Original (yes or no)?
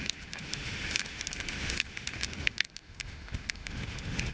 no